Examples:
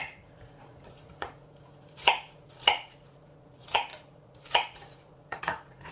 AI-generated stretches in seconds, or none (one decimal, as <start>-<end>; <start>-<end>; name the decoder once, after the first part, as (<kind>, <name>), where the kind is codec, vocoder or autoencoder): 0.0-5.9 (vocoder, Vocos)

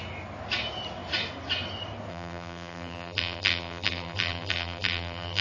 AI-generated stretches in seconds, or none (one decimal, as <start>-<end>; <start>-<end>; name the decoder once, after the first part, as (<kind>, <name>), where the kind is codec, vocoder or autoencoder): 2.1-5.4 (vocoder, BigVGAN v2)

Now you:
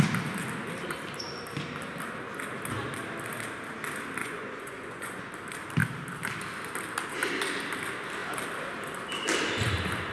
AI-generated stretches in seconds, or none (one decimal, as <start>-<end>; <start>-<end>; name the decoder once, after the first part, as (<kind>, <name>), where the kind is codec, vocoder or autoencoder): 4.2-5.2 (vocoder, Vocos)

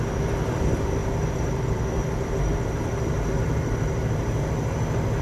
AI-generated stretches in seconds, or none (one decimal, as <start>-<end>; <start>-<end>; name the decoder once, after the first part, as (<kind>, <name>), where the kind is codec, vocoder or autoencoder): 1.0-4.1 (vocoder, BigVGAN v2)

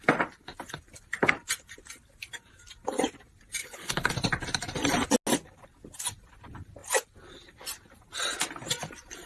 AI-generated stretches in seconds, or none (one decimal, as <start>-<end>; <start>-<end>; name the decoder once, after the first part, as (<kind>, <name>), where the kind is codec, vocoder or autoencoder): 3.6-4.1 (codec, HILCodec)